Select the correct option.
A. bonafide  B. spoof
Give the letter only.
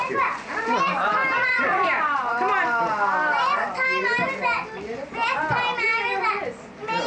A